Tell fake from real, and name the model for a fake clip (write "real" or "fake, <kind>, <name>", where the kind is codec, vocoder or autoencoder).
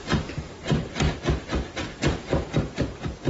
fake, vocoder, BigVGAN v2